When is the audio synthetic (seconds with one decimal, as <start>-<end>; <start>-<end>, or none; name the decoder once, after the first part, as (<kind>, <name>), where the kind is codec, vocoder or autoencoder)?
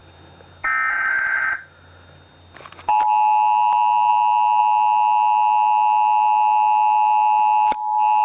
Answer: none